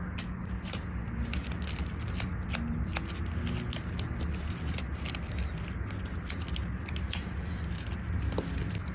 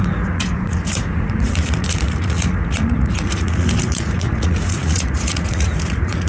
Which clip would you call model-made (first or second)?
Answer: second